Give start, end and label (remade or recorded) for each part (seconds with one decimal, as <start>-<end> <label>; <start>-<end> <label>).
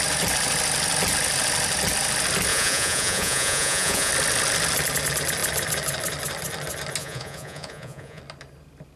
0.0-2.5 recorded; 2.5-4.1 remade; 4.1-7.0 recorded; 7.0-8.2 remade; 8.2-9.0 recorded